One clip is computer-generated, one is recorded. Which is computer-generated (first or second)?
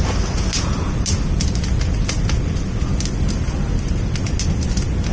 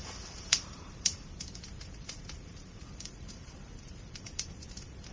second